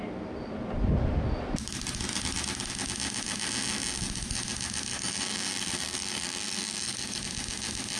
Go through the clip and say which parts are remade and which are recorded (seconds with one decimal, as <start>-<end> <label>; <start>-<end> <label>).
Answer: 0.0-4.9 recorded; 4.9-7.2 remade; 7.2-8.0 recorded